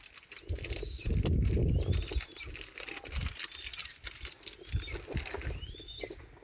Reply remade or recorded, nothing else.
recorded